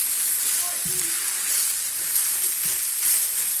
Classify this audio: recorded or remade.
recorded